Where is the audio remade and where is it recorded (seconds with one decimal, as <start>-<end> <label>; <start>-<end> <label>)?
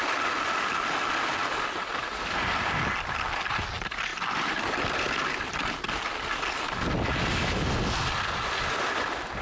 0.0-9.4 recorded